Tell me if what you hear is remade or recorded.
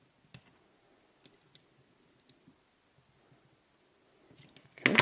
recorded